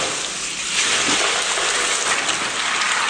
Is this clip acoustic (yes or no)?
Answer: yes